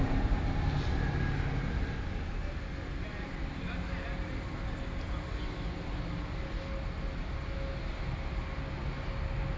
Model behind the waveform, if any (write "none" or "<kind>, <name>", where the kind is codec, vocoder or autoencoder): none